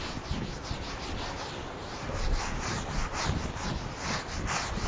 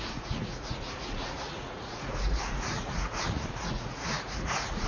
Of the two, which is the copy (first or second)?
second